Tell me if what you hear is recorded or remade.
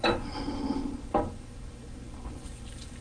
recorded